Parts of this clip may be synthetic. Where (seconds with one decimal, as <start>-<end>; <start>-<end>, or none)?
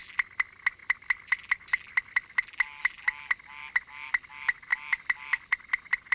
4.7-6.1